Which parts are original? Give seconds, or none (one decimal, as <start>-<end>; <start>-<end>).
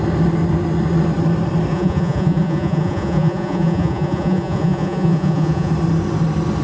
0.0-1.7; 5.7-6.6